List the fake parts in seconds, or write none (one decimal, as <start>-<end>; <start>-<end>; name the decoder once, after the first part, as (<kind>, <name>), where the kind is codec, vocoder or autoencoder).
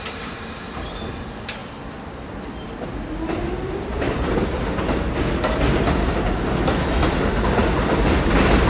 1.6-4.4 (vocoder, BigVGAN v2); 7.6-8.7